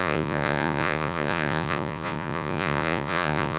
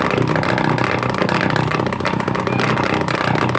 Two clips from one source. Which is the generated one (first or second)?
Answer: first